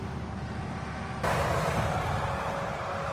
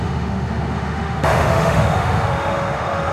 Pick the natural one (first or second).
first